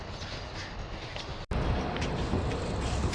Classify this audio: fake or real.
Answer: real